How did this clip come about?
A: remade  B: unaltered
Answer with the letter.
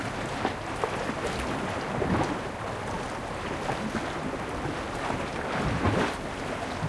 B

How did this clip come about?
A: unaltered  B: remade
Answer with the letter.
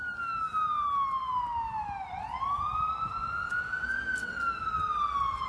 A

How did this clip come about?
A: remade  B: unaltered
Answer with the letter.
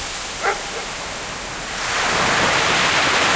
B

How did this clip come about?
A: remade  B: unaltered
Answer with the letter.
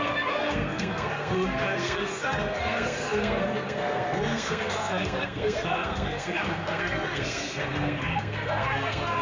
A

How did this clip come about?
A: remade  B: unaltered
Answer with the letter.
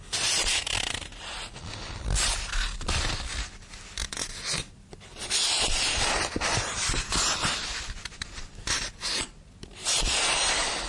B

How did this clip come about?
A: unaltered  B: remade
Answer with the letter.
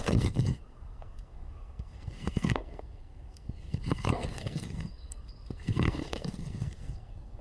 B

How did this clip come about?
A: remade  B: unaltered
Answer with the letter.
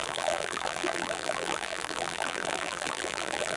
A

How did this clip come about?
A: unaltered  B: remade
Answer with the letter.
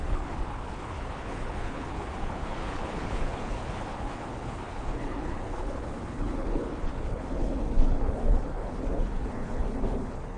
B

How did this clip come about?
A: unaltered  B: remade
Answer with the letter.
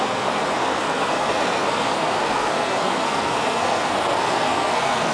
B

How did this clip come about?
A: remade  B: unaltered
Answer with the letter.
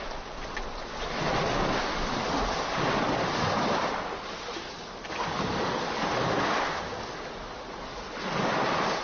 B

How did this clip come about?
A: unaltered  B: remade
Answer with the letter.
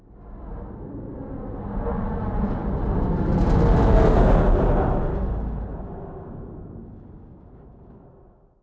A